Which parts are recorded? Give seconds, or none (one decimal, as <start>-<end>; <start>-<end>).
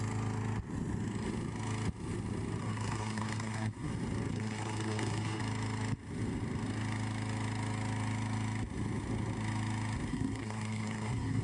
0.0-2.6; 3.9-4.3; 5.4-10.1